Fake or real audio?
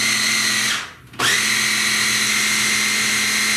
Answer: real